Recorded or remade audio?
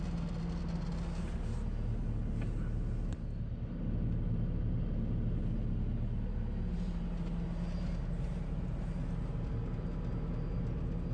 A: recorded